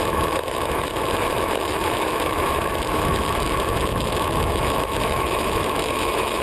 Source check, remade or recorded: remade